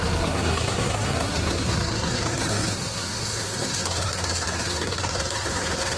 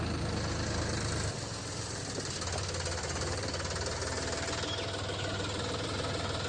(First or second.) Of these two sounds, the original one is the second